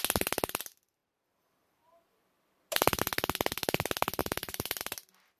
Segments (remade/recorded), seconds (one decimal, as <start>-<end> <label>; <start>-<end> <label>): 0.0-1.0 recorded; 1.0-3.0 remade; 3.0-4.2 recorded; 4.2-4.8 remade; 4.8-5.4 recorded